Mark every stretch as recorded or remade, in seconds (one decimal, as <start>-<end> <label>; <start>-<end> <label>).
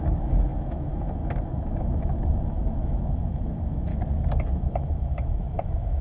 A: 0.0-3.9 remade; 3.9-4.5 recorded; 4.5-6.0 remade